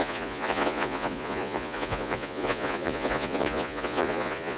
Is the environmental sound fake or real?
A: fake